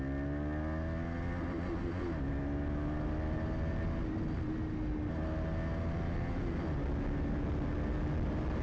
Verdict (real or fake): real